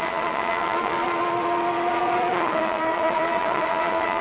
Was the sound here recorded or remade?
remade